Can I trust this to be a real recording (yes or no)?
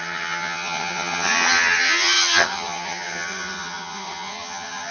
no